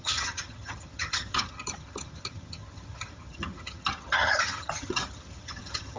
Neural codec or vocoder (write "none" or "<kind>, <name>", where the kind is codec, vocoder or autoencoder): vocoder, HiFi-GAN